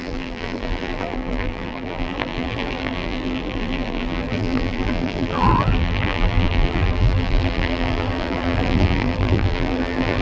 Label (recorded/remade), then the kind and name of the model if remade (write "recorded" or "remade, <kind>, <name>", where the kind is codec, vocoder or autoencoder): remade, vocoder, BigVGAN v2